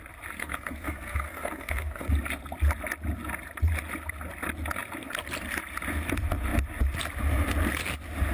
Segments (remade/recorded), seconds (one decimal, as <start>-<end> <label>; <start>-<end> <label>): 0.0-0.4 recorded; 0.4-2.1 remade; 2.1-8.3 recorded